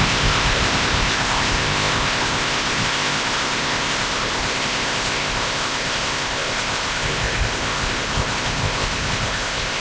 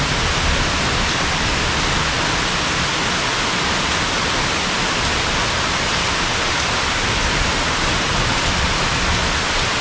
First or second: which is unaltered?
second